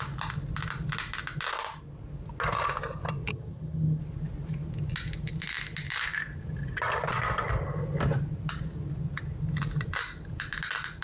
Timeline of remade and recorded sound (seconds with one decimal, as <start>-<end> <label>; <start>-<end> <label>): 0.0-3.3 recorded; 3.3-4.0 remade; 4.0-11.0 recorded